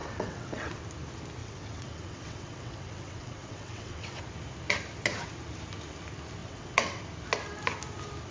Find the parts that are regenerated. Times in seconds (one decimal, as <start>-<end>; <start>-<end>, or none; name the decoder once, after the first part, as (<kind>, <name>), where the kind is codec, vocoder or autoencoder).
0.0-0.8 (vocoder, WaveNeXt); 1.4-4.2; 6.4-7.0